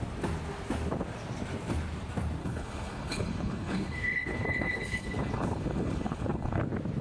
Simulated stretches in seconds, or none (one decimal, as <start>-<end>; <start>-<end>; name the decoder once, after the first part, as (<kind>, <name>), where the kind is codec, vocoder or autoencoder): 2.4-6.6 (codec, HILCodec)